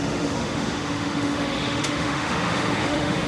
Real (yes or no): no